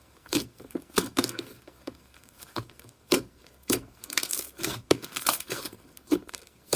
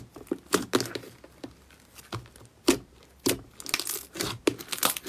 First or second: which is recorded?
second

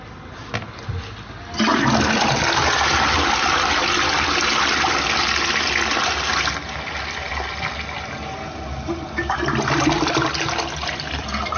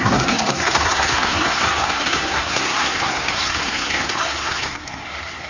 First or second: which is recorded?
first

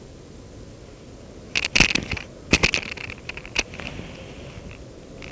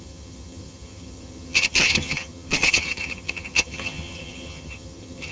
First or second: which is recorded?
first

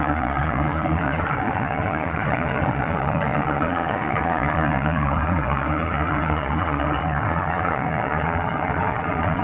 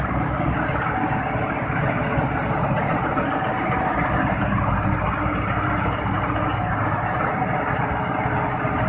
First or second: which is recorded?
second